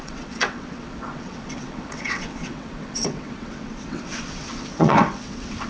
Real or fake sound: fake